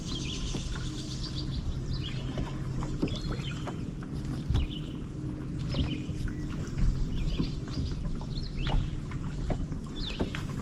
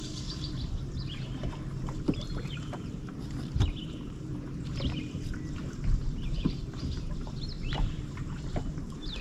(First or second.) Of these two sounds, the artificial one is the second